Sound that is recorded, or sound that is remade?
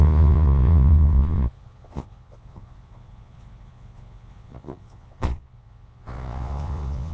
remade